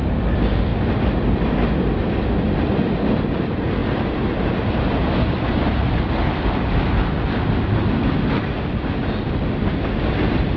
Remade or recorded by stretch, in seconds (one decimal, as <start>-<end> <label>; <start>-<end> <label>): 0.0-10.6 recorded